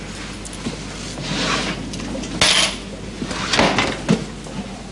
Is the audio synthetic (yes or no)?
no